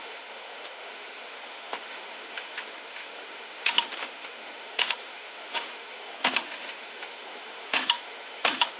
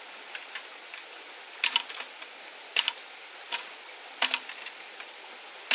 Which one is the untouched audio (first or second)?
second